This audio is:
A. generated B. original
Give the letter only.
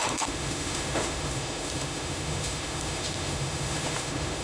A